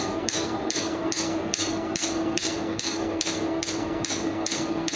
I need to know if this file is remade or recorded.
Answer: remade